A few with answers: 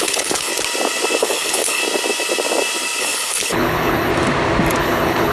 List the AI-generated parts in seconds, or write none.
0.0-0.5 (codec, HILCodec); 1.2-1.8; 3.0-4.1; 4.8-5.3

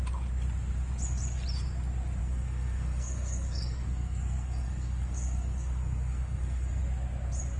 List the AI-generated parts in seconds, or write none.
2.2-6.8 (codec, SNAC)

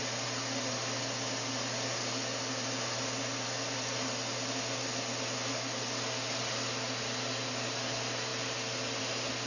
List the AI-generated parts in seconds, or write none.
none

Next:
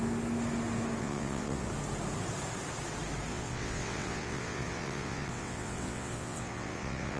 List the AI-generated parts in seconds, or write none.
1.0-1.7 (vocoder, WaveNeXt); 3.3-7.2

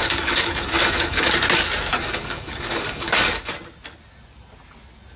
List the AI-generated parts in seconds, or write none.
0.0-1.3 (codec, DAC); 1.9-3.5

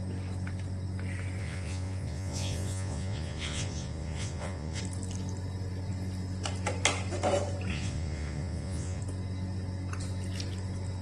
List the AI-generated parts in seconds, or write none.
1.4-4.8 (vocoder, Vocos); 7.7-9.0